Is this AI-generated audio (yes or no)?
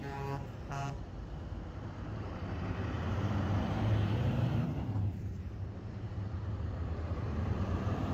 yes